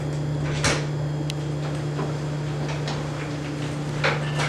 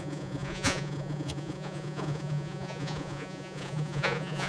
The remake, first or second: second